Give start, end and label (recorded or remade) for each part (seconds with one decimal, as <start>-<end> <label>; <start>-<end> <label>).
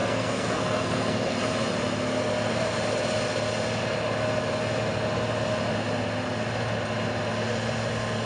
0.0-1.4 remade; 1.4-8.3 recorded